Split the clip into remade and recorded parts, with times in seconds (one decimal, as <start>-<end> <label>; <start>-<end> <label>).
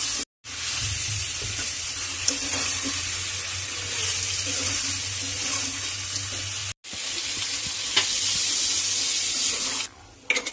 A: 0.0-10.5 recorded